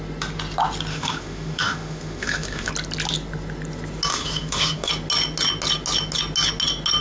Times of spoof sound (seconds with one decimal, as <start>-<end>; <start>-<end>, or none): 0.9-2.7; 4.1-4.9